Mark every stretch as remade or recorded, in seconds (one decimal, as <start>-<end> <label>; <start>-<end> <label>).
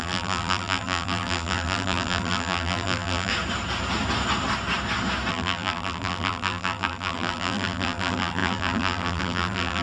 0.0-3.3 remade; 3.3-5.3 recorded; 5.3-9.8 remade